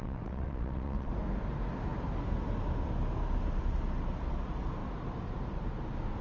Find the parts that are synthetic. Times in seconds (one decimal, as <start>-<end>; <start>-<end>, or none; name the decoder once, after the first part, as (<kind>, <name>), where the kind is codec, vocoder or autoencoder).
0.0-1.1 (vocoder, WaveNeXt)